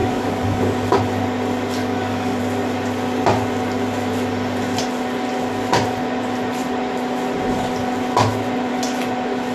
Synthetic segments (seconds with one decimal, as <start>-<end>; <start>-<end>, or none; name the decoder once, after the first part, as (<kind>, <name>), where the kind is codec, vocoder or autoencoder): 0.0-0.6 (codec, DAC); 1.8-2.4